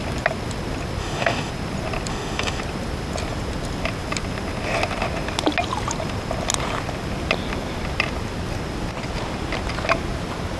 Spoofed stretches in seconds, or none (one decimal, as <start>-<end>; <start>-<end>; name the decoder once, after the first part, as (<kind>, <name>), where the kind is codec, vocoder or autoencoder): 1.0-1.5 (autoencoder, DAC-VAE); 2.1-2.6